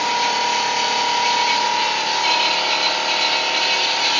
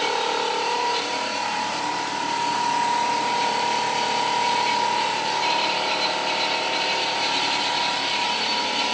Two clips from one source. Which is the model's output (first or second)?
second